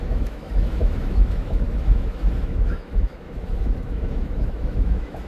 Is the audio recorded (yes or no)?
no